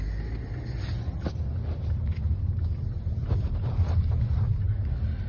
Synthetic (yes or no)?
no